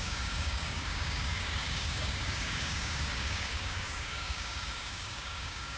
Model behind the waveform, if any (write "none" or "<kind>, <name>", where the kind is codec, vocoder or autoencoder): codec, DAC